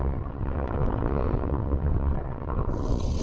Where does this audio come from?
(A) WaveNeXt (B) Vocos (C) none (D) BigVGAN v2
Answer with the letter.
A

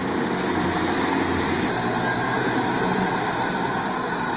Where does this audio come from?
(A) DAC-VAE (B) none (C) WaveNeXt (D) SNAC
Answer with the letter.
B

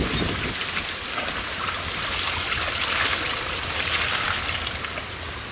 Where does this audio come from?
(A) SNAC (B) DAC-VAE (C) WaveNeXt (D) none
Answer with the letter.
D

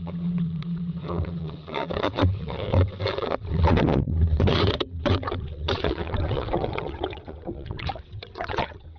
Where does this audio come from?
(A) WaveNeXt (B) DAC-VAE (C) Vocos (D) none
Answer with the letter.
A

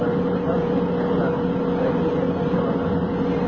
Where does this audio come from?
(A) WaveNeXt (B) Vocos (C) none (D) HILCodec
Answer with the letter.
C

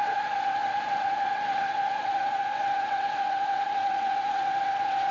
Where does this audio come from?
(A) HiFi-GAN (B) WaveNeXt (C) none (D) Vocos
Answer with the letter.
B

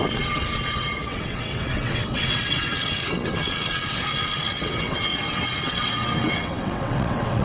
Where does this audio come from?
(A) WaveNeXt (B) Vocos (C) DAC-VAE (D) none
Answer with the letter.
A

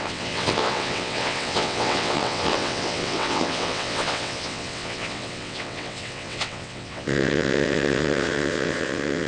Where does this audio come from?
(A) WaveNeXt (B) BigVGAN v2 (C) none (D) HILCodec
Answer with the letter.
A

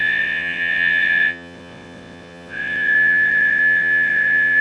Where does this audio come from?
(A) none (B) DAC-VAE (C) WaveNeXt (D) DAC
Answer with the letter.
C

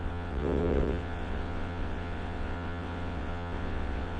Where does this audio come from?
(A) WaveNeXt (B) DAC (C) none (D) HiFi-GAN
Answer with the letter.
A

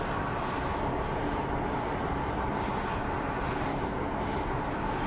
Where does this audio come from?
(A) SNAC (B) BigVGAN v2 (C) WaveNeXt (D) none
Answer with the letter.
D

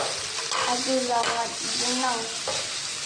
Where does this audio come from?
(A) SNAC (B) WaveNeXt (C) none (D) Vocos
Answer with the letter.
C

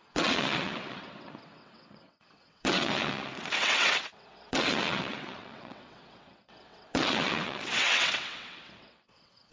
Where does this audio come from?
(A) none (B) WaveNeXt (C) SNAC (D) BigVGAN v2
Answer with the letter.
B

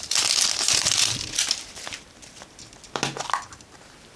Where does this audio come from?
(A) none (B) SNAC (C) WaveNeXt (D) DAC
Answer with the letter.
A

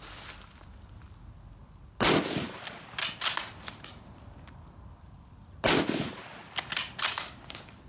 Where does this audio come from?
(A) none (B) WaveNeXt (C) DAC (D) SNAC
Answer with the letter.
A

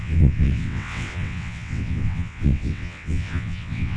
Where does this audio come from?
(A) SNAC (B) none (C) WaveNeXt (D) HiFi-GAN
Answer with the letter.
C